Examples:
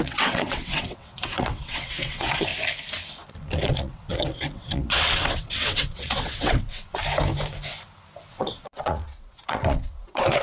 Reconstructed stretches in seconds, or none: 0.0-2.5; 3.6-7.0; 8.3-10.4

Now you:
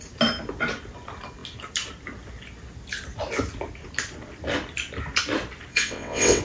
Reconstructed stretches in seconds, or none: 5.7-6.4

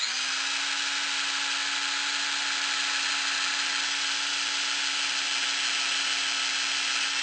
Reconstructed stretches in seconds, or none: none

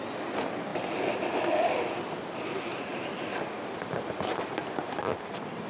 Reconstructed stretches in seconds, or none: none

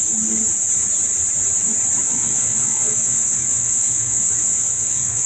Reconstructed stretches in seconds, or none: 2.0-5.3

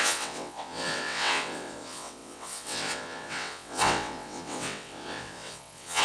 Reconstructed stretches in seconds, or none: 0.0-6.0

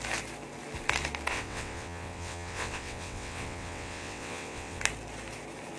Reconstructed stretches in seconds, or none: 1.3-4.8

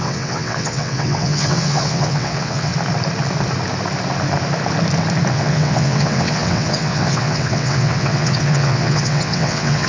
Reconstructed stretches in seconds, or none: 0.0-2.7; 5.3-9.9